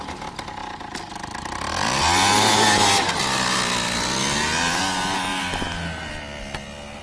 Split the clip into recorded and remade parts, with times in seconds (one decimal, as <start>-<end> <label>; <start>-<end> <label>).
0.0-0.6 recorded; 0.6-4.8 remade; 4.8-5.3 recorded; 5.3-6.1 remade; 6.1-7.0 recorded